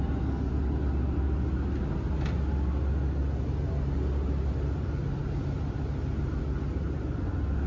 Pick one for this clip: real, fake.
real